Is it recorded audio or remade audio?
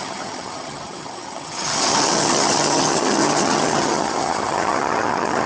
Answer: remade